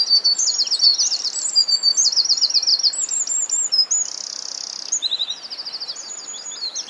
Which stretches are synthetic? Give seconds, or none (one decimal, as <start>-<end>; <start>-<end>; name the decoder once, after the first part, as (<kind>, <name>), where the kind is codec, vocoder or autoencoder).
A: none